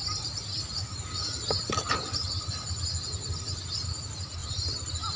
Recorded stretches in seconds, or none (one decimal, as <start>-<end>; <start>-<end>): 0.0-5.2